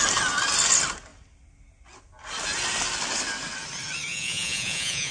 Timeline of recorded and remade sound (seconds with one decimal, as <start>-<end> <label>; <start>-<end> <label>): 0.0-4.1 recorded; 4.1-5.1 remade